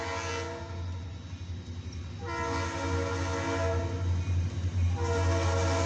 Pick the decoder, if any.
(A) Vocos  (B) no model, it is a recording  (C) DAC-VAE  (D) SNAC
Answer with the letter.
B